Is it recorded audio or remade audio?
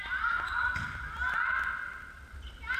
recorded